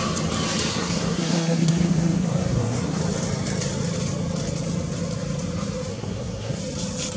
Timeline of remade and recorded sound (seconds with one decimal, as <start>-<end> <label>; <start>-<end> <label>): 0.0-0.7 recorded; 0.7-3.0 remade; 3.0-5.9 recorded; 5.9-6.6 remade; 6.6-7.2 recorded